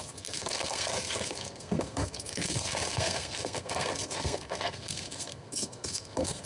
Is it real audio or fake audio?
fake